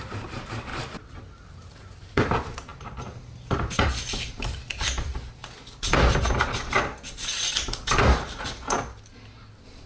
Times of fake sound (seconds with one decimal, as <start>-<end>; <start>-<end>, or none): 0.0-5.4; 9.5-9.9